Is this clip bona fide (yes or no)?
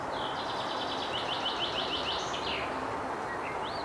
yes